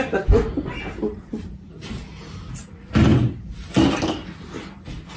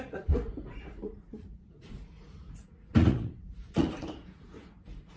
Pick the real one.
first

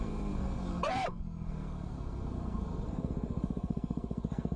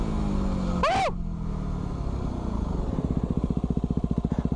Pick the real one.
second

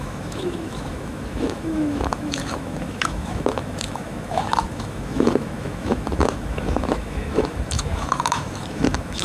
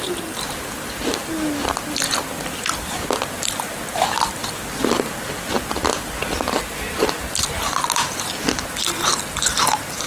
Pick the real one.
second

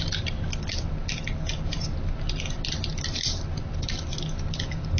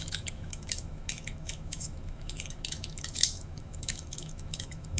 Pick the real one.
first